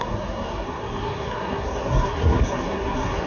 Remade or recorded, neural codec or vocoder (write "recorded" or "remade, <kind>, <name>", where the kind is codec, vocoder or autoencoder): remade, codec, SNAC